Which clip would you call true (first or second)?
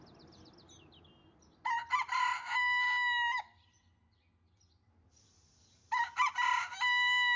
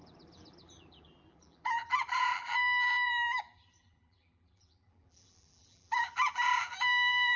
first